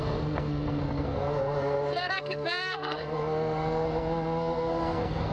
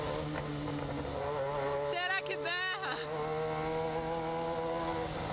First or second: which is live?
second